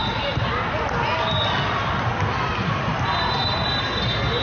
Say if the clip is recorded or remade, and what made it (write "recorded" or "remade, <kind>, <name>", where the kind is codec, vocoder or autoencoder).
recorded